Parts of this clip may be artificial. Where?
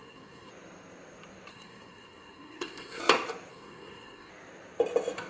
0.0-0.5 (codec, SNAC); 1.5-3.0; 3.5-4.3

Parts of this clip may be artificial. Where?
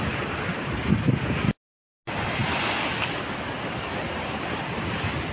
none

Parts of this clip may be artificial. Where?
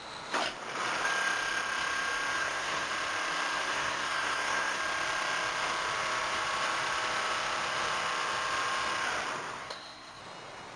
2.4-2.9 (codec, SNAC); 3.6-4.8; 9.6-10.2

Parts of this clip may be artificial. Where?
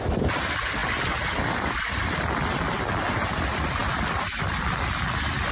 none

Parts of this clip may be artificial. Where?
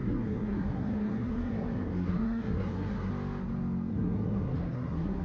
0.0-3.1 (codec, SNAC); 3.9-5.2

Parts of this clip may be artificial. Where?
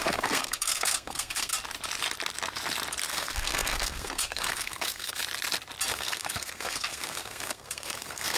0.0-1.5 (codec, SNAC); 3.1-5.2; 5.9-8.4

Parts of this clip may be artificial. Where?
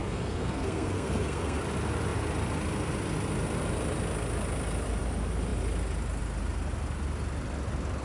0.0-1.6 (codec, SNAC)